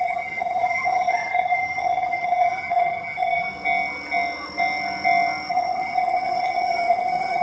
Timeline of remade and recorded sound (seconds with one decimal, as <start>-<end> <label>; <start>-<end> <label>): 0.0-3.5 remade; 3.5-5.5 recorded; 5.5-7.4 remade